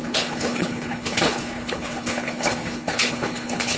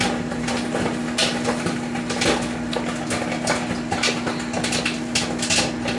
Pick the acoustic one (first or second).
second